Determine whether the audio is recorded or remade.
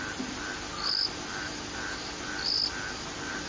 recorded